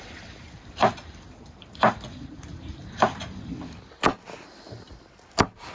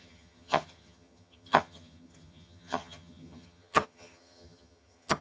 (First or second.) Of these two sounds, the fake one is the second